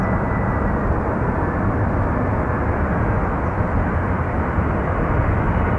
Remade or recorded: recorded